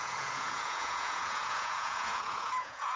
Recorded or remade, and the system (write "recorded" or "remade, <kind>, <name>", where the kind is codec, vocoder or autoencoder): remade, vocoder, Vocos